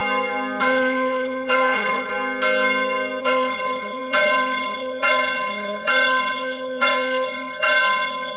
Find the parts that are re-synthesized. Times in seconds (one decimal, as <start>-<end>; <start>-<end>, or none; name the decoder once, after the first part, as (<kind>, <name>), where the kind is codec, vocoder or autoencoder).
0.6-2.1 (vocoder, HiFi-GAN); 3.2-8.4